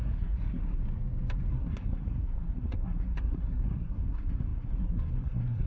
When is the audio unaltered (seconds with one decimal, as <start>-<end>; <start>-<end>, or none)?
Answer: 0.8-1.5